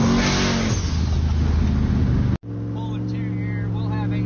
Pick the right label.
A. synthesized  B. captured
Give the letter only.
B